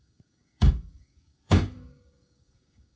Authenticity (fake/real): fake